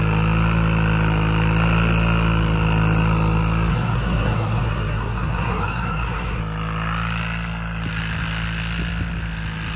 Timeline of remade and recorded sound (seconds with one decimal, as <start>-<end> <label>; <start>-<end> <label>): 0.0-3.7 recorded; 3.7-6.4 remade; 6.4-9.8 recorded